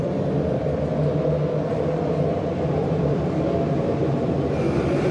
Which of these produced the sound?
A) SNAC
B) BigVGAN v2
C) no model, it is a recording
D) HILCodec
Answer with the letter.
C